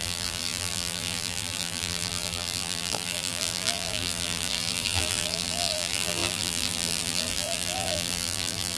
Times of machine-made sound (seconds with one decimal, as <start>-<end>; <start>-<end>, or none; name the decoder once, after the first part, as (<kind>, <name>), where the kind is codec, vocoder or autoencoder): 0.0-8.8 (vocoder, BigVGAN v2)